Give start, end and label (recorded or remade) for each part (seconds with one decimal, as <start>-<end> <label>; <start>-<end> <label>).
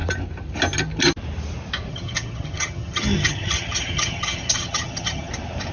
0.0-1.9 recorded; 1.9-5.3 remade; 5.3-5.7 recorded